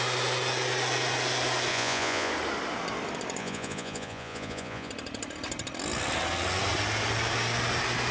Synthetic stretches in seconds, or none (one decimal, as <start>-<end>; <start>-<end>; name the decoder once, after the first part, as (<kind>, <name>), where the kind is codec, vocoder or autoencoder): 1.7-2.3 (vocoder, Vocos); 3.4-4.9